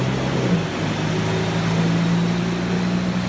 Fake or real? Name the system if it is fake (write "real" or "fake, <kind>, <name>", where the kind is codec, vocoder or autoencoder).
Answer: real